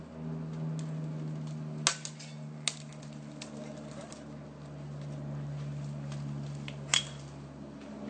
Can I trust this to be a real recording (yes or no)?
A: yes